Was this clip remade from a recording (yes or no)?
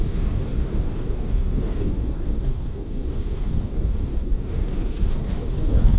yes